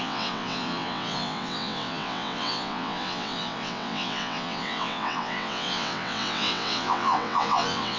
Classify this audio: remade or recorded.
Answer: remade